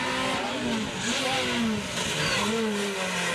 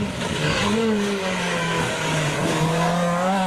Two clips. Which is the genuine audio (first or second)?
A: first